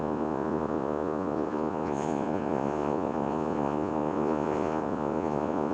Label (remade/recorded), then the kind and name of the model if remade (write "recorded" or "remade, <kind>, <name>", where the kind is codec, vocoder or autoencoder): remade, vocoder, Vocos